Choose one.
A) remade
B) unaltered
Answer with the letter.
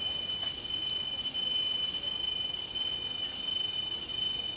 B